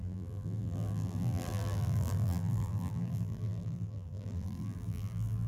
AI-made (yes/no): yes